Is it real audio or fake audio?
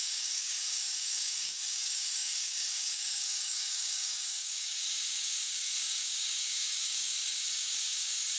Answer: fake